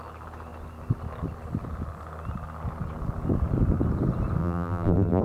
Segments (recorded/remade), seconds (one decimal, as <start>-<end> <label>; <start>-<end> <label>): 0.0-4.4 recorded; 4.4-5.2 remade